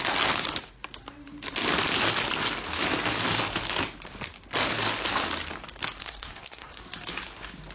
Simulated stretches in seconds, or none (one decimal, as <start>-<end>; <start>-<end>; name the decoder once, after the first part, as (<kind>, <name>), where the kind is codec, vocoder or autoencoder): 6.0-6.8 (codec, SNAC)